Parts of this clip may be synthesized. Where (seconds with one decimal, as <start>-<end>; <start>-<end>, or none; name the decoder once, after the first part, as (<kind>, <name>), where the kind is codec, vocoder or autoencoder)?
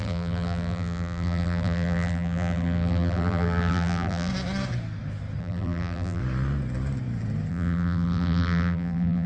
0.0-4.3 (vocoder, BigVGAN v2); 5.4-6.2; 7.5-9.3